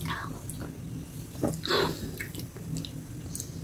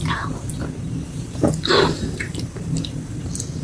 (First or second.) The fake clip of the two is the second